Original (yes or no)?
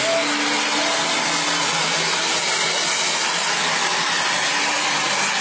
yes